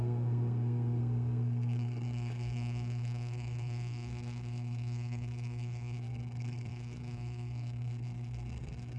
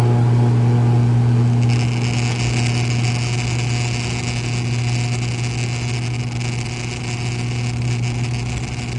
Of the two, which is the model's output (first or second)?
first